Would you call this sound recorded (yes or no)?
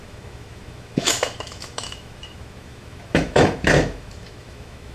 no